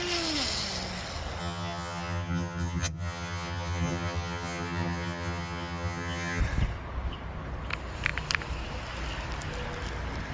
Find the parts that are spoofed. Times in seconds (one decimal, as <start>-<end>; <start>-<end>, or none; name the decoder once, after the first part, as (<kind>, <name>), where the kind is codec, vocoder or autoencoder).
1.4-6.4 (vocoder, HiFi-GAN)